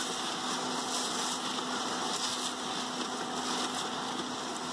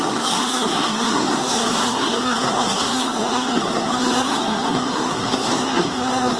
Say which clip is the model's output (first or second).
second